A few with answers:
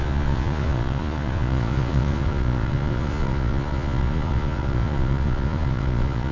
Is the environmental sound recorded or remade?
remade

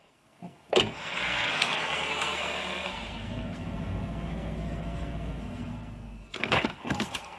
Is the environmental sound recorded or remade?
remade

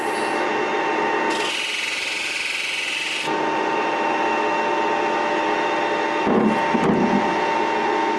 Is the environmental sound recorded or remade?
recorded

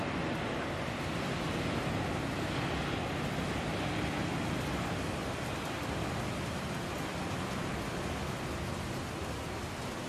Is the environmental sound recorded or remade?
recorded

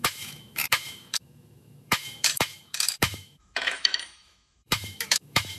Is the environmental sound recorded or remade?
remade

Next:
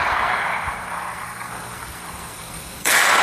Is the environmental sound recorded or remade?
remade